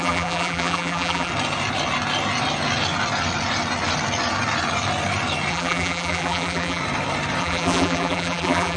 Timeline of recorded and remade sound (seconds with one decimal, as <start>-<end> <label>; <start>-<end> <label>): 0.0-1.3 remade; 1.3-5.5 recorded; 5.5-6.8 remade; 6.8-7.4 recorded; 7.4-8.8 remade